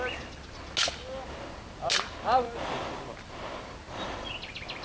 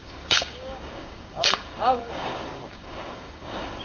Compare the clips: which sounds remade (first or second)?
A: second